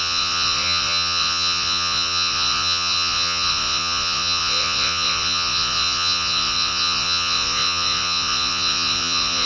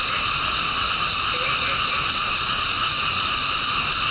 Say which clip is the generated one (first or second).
first